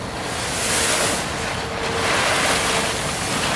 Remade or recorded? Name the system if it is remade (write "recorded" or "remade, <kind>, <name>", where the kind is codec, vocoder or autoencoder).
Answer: recorded